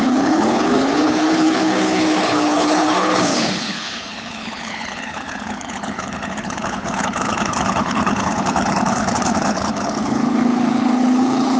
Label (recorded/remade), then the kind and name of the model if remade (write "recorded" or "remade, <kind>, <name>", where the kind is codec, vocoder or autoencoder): remade, codec, HILCodec